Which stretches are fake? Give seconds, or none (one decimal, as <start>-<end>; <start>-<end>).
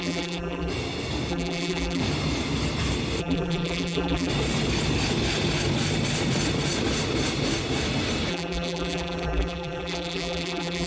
0.0-0.7; 1.3-2.0; 3.2-4.3; 8.3-10.9